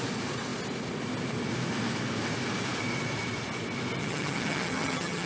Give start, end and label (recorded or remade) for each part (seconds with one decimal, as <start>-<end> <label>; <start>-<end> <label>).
0.0-4.0 recorded; 4.0-5.3 remade